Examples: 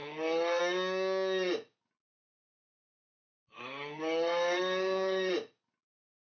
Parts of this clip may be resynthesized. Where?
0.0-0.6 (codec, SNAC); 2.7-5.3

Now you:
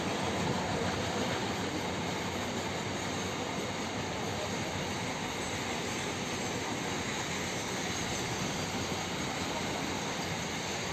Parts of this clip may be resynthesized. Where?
none